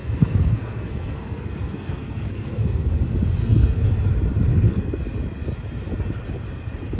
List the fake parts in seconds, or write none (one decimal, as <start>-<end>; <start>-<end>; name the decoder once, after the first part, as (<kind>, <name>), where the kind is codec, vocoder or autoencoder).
0.0-3.0 (codec, SNAC); 3.4-3.9; 4.5-5.0